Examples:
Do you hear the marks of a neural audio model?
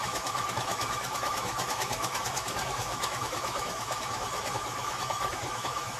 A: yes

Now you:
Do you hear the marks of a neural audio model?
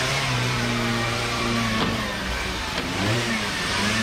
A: yes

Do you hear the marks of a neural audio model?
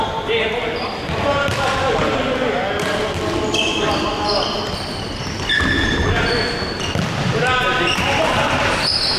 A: no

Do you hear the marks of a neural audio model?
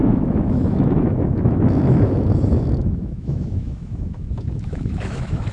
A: yes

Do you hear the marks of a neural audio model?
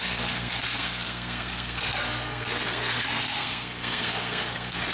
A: yes